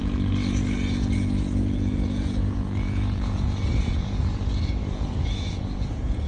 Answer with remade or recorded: remade